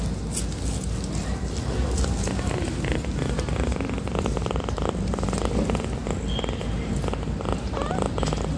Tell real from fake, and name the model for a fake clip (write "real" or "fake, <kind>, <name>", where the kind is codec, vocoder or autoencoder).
real